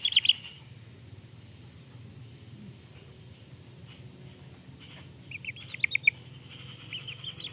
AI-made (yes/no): no